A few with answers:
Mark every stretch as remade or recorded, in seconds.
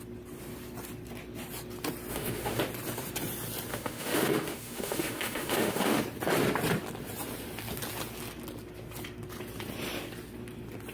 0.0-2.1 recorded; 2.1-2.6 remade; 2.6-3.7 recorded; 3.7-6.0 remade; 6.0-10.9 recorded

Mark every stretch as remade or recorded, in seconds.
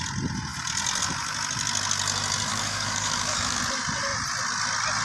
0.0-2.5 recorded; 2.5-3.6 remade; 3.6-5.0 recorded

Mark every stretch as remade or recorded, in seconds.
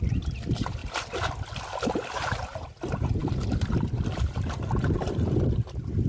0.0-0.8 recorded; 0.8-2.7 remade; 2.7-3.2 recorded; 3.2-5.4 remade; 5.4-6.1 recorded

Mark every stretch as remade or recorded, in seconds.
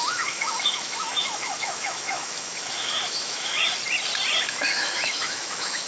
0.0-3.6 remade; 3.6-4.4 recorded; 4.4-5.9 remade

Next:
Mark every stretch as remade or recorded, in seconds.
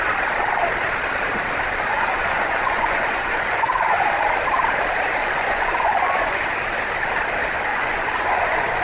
0.0-1.9 recorded; 1.9-4.2 remade; 4.2-5.2 recorded; 5.2-6.4 remade; 6.4-7.7 recorded; 7.7-8.8 remade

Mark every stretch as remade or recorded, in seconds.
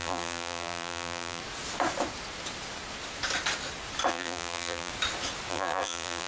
0.0-1.4 remade; 1.4-4.1 recorded; 4.1-4.9 remade; 4.9-5.5 recorded; 5.5-6.3 remade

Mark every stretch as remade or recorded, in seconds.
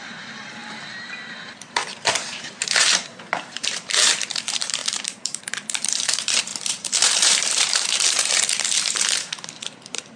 0.0-10.2 remade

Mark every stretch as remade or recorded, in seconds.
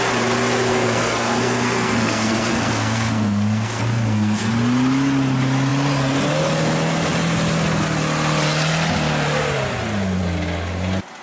0.0-0.7 recorded; 0.7-4.5 remade; 4.5-11.2 recorded